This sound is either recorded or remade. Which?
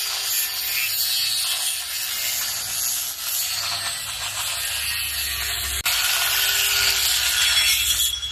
recorded